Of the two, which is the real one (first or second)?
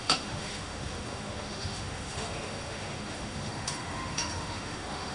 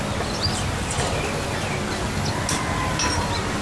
second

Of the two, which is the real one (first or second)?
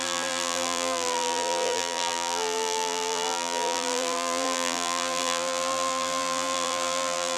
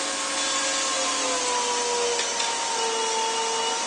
second